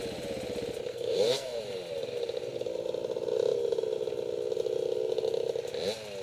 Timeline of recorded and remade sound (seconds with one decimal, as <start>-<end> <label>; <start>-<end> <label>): 0.0-0.9 recorded; 0.9-1.6 remade; 1.6-6.2 recorded